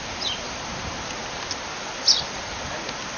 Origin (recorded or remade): recorded